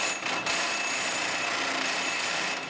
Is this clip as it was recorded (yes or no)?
yes